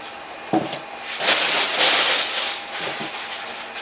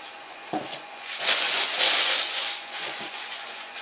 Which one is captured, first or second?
first